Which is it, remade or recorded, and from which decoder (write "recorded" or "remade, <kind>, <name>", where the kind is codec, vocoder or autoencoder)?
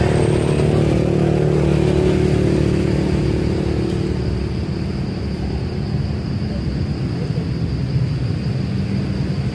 recorded